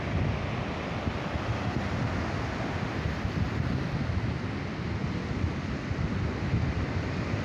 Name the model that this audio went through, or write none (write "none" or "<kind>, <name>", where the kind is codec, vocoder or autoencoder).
none